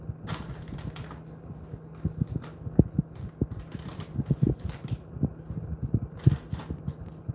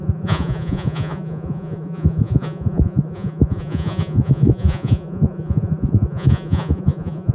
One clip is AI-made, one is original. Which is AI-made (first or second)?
second